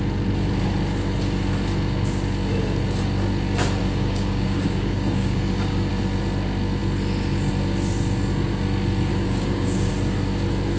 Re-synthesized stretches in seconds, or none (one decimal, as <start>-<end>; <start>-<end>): 3.8-5.9; 9.1-9.9